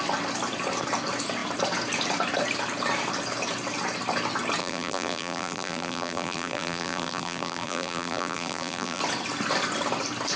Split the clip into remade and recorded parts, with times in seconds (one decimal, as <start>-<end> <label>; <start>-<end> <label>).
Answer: 0.0-4.6 recorded; 4.6-9.0 remade; 9.0-10.4 recorded

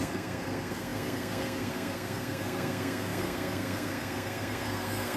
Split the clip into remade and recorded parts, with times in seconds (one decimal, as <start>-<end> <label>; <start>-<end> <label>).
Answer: 0.0-5.2 remade

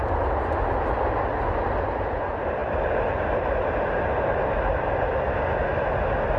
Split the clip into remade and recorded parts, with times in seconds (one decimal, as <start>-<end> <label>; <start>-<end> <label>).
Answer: 0.0-6.4 recorded

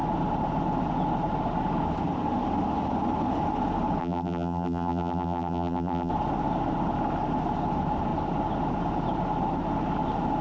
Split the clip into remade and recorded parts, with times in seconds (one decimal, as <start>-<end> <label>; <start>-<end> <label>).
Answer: 0.0-4.0 recorded; 4.0-6.1 remade; 6.1-10.4 recorded

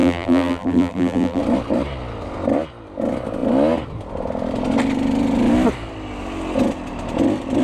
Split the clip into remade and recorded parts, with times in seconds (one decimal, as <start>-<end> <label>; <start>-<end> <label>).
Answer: 0.0-1.4 remade; 1.4-7.6 recorded

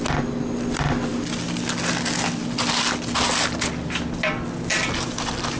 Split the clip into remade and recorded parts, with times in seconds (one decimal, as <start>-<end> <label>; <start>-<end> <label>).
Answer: 0.0-5.6 recorded

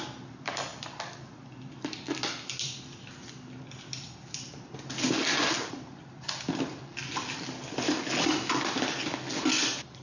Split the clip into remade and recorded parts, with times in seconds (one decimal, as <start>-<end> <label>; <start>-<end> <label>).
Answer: 0.0-10.0 recorded

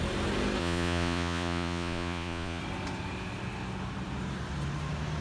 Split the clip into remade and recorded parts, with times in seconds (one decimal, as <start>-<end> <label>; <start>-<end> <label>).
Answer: 0.0-0.6 recorded; 0.6-2.6 remade; 2.6-5.2 recorded